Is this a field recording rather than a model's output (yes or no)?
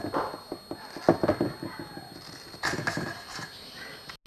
yes